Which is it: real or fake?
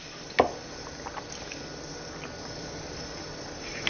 real